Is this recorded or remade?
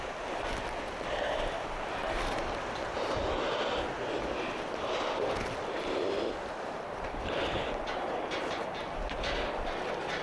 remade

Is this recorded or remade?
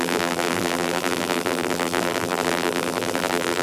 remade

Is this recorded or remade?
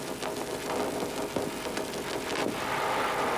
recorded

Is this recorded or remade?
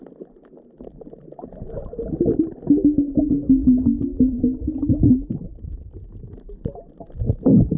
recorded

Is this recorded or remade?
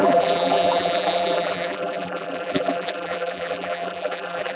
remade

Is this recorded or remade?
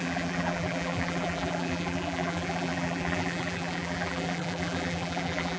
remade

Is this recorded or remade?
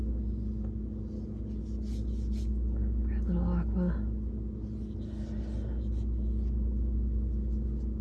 recorded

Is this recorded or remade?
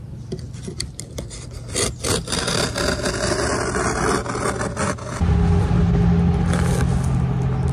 recorded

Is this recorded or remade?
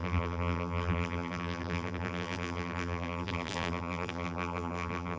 remade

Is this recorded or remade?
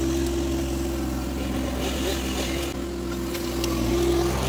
recorded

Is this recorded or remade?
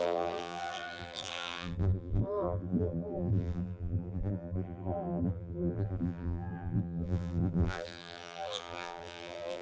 remade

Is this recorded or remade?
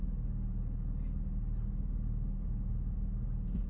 recorded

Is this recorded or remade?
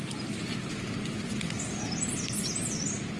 recorded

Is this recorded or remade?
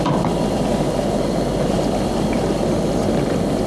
recorded